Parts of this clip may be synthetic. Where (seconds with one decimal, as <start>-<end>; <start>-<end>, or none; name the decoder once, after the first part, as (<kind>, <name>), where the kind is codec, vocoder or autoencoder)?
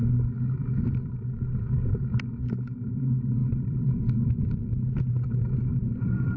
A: none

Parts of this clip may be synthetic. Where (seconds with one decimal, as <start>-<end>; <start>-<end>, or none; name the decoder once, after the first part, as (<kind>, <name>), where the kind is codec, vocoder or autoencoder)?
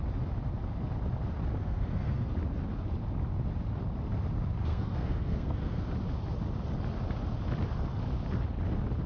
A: 1.6-2.3 (codec, SNAC); 4.7-5.9